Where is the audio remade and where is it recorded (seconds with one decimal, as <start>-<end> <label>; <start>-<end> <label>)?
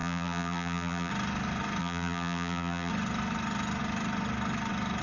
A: 0.0-1.1 remade; 1.1-1.8 recorded; 1.8-2.9 remade; 2.9-5.0 recorded